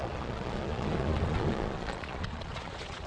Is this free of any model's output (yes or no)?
no